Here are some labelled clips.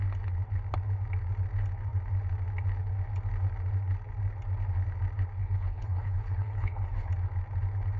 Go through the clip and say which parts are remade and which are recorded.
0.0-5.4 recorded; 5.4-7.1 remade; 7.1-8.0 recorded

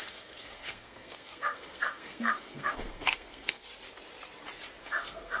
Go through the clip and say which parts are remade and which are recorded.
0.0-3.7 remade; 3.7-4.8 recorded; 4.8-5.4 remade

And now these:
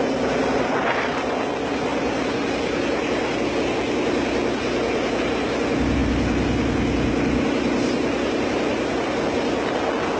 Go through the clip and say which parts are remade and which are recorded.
0.0-10.2 recorded

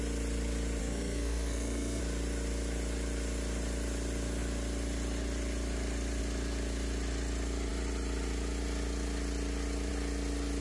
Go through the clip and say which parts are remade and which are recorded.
0.0-0.8 recorded; 0.8-2.0 remade; 2.0-10.6 recorded

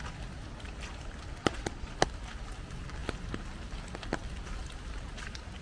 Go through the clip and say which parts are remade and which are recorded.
0.0-1.4 recorded; 1.4-1.9 remade; 1.9-5.6 recorded

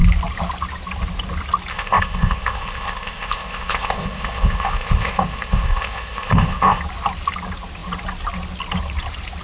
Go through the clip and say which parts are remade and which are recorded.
0.0-1.7 recorded; 1.7-6.8 remade; 6.8-9.4 recorded

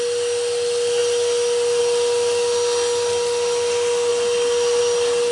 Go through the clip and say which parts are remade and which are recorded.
0.0-5.3 recorded

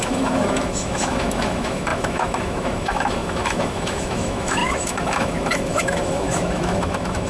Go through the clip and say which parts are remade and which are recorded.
0.0-7.3 remade